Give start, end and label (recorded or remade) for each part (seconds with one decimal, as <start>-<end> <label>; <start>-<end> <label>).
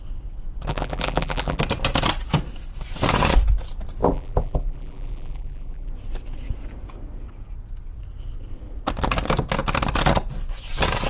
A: 0.0-0.7 recorded; 0.7-1.6 remade; 1.6-4.0 recorded; 4.0-5.9 remade; 5.9-11.1 recorded